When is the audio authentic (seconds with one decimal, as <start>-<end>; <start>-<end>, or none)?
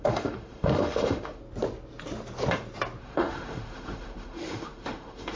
1.4-3.0